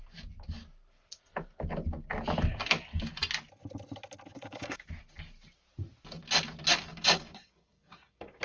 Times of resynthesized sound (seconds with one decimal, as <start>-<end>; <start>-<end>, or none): 4.3-4.9; 6.9-8.4